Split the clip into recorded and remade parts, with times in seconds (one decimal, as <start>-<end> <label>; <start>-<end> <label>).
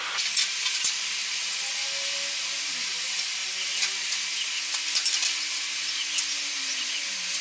0.0-7.4 recorded